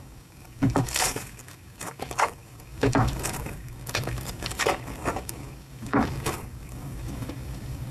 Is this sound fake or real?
fake